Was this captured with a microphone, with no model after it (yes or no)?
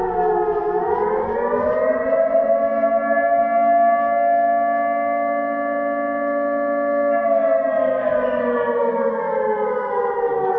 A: yes